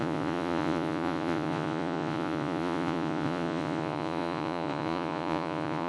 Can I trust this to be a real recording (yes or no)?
no